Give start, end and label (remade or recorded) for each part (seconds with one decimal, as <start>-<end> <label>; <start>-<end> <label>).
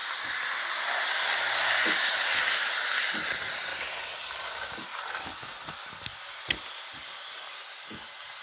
0.0-8.4 recorded